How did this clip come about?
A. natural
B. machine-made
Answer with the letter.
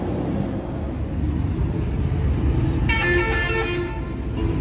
A